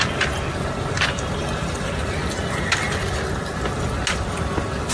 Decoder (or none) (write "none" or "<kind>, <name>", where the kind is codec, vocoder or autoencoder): none